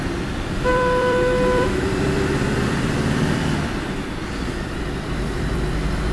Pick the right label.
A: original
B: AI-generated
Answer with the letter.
B